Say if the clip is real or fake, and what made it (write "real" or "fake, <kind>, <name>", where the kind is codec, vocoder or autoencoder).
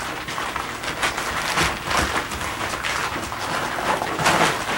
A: real